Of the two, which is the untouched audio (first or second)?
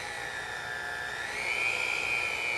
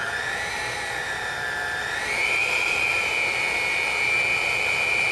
first